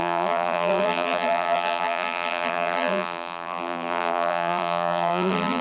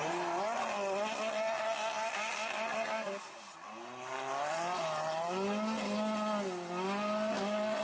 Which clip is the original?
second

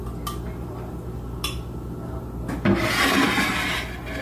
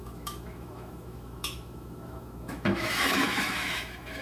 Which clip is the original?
first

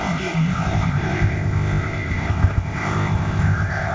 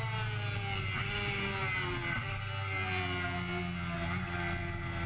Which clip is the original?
second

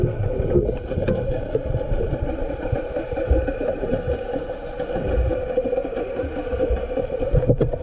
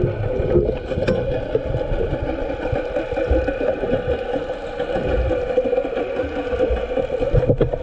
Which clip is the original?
second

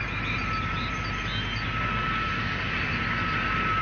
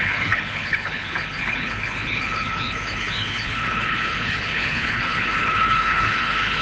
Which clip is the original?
first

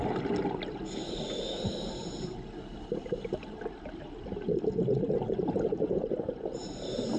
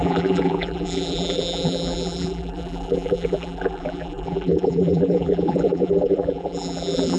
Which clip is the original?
first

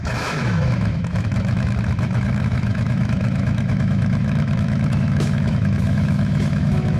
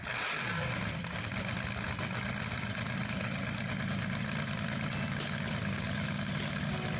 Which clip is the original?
second